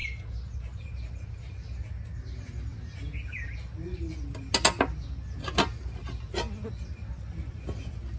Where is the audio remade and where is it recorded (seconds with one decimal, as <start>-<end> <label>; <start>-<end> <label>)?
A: 0.0-8.2 recorded